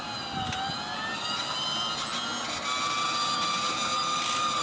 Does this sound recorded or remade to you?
recorded